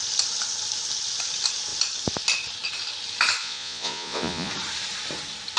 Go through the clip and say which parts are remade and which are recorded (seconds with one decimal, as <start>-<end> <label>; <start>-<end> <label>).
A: 0.0-3.4 recorded; 3.4-4.5 remade; 4.5-5.6 recorded

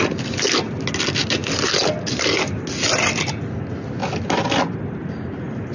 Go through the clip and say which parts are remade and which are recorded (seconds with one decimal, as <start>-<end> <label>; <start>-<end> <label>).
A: 0.0-5.7 recorded